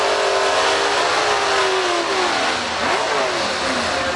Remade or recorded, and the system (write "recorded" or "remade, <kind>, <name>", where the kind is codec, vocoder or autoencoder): recorded